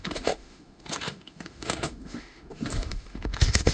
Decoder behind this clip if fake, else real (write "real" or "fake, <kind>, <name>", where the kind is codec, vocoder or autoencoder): fake, autoencoder, DAC-VAE